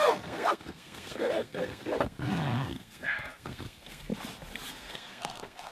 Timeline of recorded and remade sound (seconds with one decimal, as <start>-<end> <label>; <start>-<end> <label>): 0.0-4.1 remade; 4.1-4.7 recorded; 4.7-5.7 remade